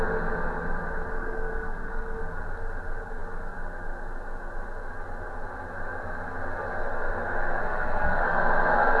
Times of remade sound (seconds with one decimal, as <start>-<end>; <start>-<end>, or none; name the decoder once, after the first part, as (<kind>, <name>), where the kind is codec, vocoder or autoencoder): 1.1-2.2 (codec, SNAC); 7.6-8.2